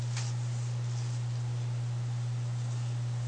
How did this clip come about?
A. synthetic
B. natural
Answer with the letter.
B